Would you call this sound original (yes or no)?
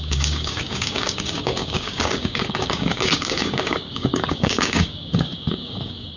no